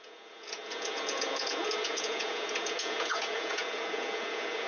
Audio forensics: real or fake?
fake